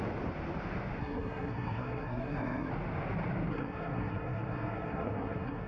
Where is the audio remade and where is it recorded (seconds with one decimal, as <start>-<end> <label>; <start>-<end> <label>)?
0.0-1.0 recorded; 1.0-2.7 remade; 2.7-3.5 recorded; 3.5-5.7 remade